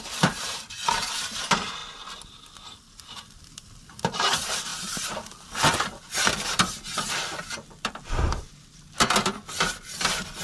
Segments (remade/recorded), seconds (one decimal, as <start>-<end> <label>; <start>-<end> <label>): 0.0-1.8 remade; 1.8-3.4 recorded; 3.4-10.4 remade